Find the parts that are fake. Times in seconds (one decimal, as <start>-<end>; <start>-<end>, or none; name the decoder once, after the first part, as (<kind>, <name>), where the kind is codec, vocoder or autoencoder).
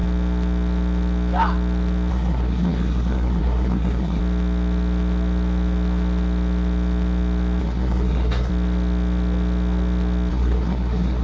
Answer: 2.1-4.2 (codec, SNAC); 7.6-8.5; 10.3-11.2